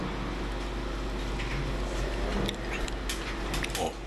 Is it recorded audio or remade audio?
recorded